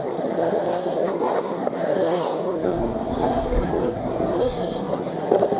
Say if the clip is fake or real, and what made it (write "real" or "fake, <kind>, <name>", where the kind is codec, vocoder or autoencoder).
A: fake, codec, SNAC